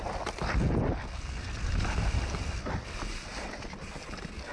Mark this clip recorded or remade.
recorded